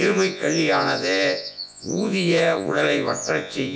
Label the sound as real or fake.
fake